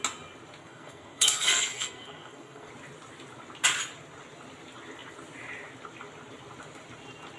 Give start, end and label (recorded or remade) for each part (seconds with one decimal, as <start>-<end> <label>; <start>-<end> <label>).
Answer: 0.0-0.6 recorded; 0.6-2.7 remade; 2.7-7.4 recorded